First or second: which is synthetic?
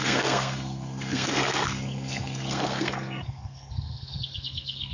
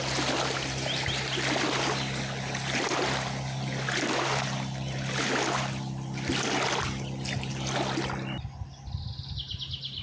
first